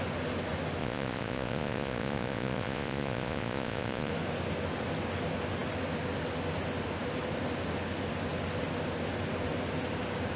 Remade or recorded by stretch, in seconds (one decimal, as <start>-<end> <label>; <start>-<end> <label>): 0.0-0.8 recorded; 0.8-4.1 remade; 4.1-10.4 recorded